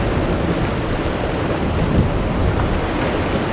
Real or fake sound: real